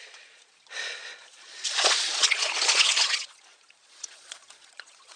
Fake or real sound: fake